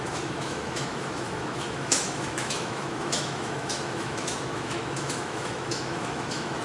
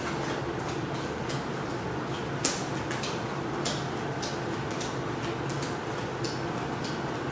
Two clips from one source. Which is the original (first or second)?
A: second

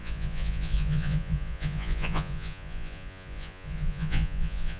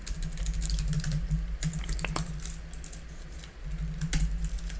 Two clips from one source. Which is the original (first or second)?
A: second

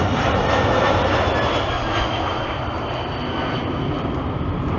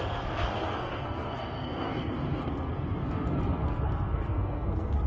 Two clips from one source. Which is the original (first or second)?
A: first